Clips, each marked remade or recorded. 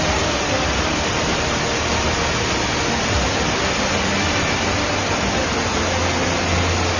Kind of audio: recorded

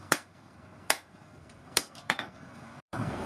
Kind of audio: remade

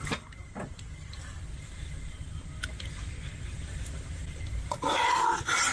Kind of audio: recorded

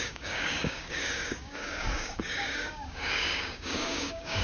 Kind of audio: remade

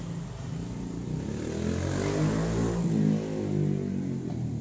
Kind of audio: recorded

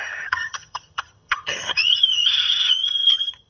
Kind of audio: remade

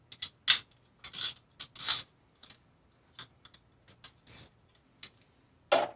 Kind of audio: recorded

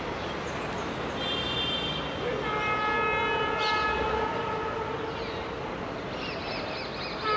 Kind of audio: recorded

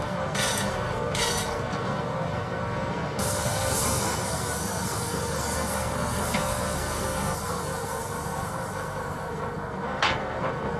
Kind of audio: remade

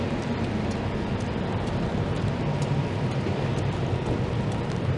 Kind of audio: remade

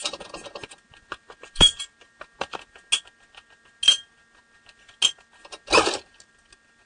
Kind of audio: recorded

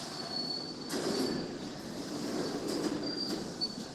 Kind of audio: remade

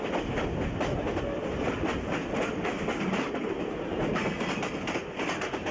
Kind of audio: recorded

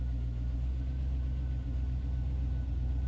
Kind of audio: recorded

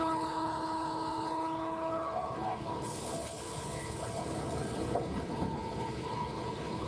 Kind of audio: remade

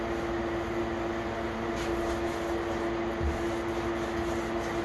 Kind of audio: recorded